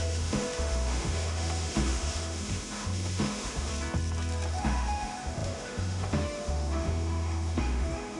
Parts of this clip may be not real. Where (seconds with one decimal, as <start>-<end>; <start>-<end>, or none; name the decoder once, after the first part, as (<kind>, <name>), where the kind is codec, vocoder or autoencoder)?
0.0-3.7 (autoencoder, DAC-VAE); 4.5-8.2